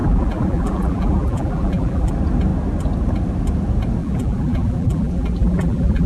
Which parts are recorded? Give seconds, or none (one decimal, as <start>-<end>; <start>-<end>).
2.1-4.0